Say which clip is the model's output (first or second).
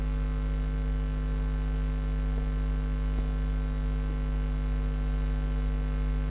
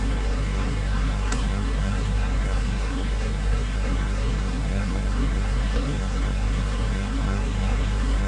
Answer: second